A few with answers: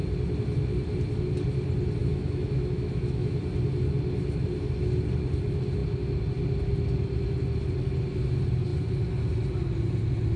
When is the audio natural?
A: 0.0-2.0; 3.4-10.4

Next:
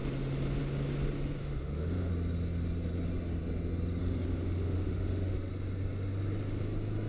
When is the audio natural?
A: 0.0-1.4; 2.1-4.0; 5.5-7.1

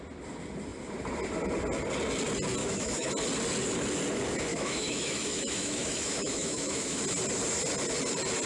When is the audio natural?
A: 0.0-2.6; 3.1-4.5; 7.0-8.5

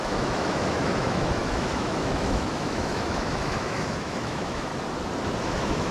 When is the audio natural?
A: 4.7-5.4

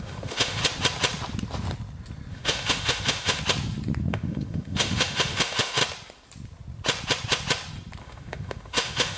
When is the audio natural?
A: 0.6-2.3; 3.4-4.1; 5.8-8.0

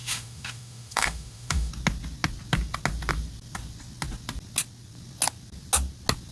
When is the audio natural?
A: 1.7-6.3

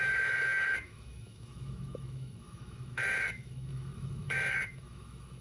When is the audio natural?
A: none